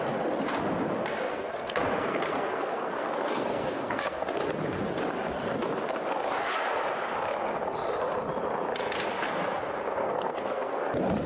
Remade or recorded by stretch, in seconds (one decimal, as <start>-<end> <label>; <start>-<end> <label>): 0.0-1.3 recorded; 1.3-4.3 remade; 4.3-10.0 recorded; 10.0-10.8 remade; 10.8-11.3 recorded